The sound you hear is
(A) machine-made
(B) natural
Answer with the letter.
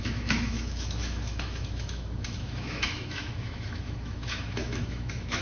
A